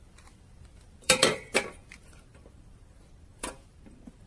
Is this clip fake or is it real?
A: fake